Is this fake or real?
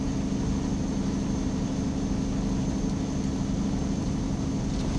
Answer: real